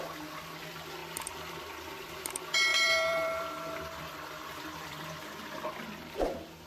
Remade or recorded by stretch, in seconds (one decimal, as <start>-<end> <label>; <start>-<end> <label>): 0.0-1.0 recorded; 1.0-1.5 remade; 1.5-2.7 recorded; 2.7-5.2 remade; 5.2-6.7 recorded